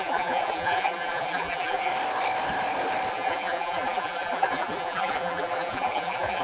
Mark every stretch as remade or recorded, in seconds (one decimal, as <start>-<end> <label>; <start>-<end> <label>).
0.0-1.9 remade; 1.9-3.1 recorded; 3.1-6.4 remade